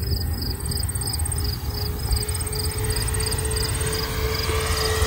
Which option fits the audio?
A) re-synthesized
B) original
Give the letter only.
B